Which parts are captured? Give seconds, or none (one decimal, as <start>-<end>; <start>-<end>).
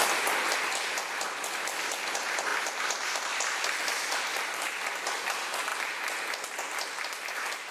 0.0-7.7